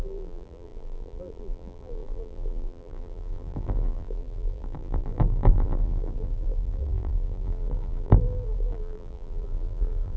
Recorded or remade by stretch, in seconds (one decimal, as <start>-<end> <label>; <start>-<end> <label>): 0.0-10.2 remade